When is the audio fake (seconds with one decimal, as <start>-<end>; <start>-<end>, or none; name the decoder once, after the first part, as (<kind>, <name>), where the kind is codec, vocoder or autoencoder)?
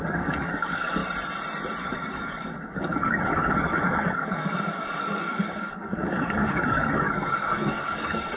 0.0-1.0 (codec, DAC); 1.8-8.4